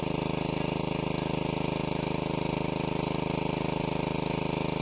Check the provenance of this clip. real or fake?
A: real